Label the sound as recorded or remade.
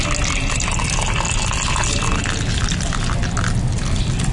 recorded